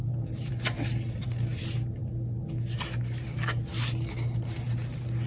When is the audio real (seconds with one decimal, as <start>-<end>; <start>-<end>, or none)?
0.0-5.3